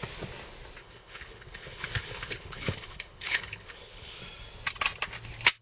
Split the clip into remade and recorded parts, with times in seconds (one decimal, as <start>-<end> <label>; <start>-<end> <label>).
0.0-0.8 recorded; 0.8-4.2 remade; 4.2-5.6 recorded